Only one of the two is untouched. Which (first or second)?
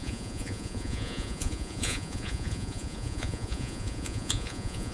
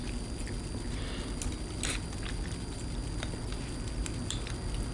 second